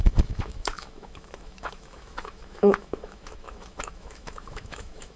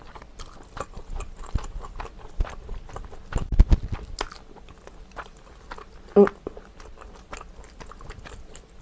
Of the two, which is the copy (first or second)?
first